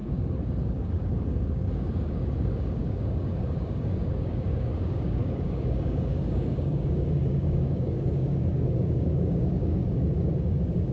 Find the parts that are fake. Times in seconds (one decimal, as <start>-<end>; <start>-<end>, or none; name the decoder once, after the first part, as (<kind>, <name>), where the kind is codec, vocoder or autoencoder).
0.0-10.9 (codec, DAC)

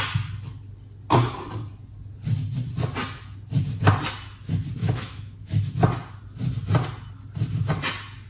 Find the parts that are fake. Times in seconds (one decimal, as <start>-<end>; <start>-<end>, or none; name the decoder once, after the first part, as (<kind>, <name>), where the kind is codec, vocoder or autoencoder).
4.8-5.7 (autoencoder, DAC-VAE)

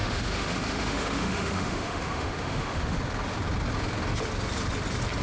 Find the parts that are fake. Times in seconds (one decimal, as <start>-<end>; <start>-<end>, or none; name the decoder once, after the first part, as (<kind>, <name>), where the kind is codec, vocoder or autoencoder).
0.0-3.0 (autoencoder, DAC-VAE)

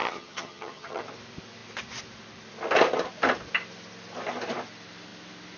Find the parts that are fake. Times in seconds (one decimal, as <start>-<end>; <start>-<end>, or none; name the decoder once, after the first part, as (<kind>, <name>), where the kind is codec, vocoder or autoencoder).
0.0-1.0 (vocoder, HiFi-GAN)